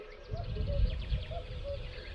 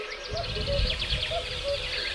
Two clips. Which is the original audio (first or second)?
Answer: second